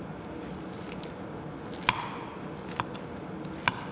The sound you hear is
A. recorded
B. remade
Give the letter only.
A